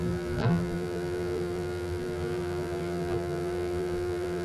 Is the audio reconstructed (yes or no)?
yes